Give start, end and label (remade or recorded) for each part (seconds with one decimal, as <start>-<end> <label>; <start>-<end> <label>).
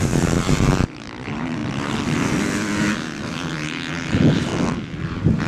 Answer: 0.0-1.6 remade; 1.6-3.5 recorded; 3.5-4.5 remade; 4.5-5.0 recorded; 5.0-5.5 remade